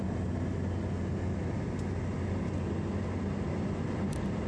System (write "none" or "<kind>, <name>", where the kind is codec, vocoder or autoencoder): none